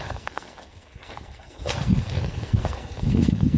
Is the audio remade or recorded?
remade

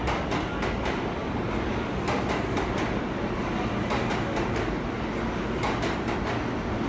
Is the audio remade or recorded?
recorded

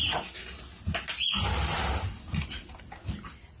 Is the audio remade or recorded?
recorded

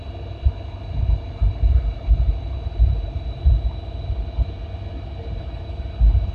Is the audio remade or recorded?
recorded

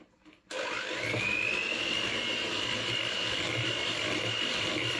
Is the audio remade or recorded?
recorded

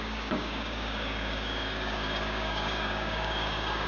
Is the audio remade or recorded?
remade